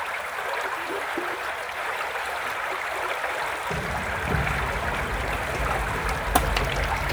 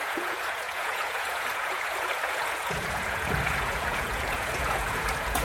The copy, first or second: second